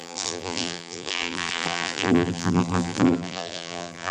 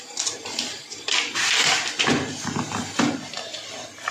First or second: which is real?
second